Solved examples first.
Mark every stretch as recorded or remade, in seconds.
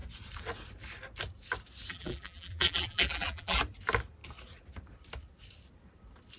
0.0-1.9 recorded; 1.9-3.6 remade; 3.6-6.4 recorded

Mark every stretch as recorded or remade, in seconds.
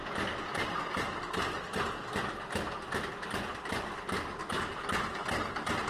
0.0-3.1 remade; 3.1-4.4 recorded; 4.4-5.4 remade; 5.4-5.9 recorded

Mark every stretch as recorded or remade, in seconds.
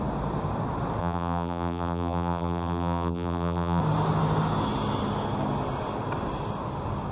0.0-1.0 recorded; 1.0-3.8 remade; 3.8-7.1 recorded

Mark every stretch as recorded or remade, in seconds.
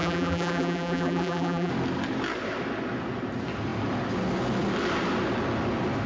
0.0-1.7 remade; 1.7-6.1 recorded